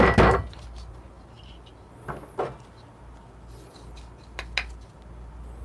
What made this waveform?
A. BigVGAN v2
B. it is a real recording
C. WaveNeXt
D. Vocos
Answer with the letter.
B